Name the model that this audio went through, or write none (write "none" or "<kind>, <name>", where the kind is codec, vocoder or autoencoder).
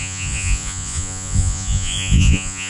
vocoder, Vocos